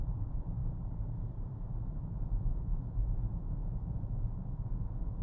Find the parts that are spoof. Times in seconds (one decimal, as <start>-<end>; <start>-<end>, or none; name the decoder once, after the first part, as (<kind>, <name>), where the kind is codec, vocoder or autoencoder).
0.0-0.6 (vocoder, Vocos); 2.0-5.2